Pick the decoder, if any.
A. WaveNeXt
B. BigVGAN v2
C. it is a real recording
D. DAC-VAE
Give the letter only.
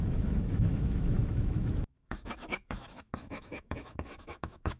D